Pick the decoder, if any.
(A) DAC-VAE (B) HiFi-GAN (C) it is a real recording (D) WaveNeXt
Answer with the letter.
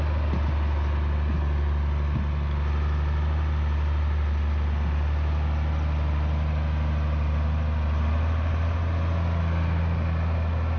C